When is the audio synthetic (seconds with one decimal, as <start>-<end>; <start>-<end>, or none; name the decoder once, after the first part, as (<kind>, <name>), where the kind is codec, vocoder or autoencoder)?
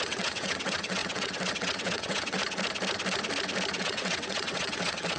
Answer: 0.0-2.4 (vocoder, WaveNeXt); 3.8-5.2